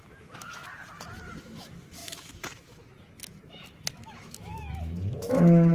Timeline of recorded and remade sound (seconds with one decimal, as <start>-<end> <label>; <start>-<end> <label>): 0.0-0.6 remade; 0.6-1.4 recorded; 1.4-5.7 remade